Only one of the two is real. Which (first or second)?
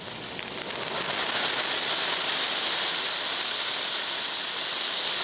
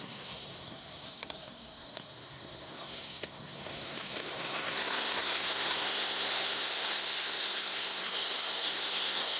first